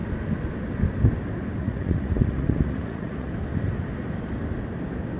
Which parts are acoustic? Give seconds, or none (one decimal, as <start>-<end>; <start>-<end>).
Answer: 0.0-1.6; 3.3-5.2